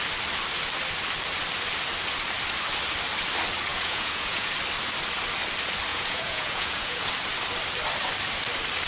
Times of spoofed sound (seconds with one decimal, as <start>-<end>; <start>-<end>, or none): 3.7-4.5; 5.9-7.1